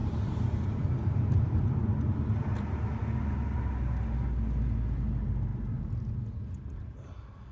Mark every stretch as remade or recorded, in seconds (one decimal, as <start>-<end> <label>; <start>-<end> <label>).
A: 0.0-1.7 remade; 1.7-7.5 recorded